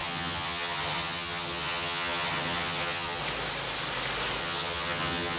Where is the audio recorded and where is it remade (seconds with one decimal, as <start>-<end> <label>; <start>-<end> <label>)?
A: 0.0-3.2 remade; 3.2-4.4 recorded; 4.4-5.4 remade